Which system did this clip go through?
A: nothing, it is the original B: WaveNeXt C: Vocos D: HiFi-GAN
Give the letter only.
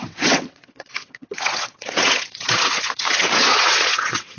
B